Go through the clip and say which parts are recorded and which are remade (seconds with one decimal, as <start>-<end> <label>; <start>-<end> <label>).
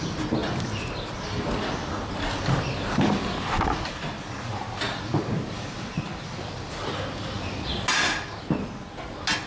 0.0-9.5 recorded